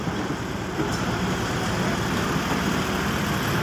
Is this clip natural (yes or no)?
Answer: no